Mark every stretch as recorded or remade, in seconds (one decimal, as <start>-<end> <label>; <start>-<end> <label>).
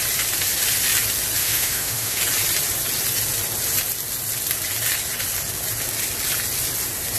0.0-1.4 recorded; 1.4-2.2 remade; 2.2-7.2 recorded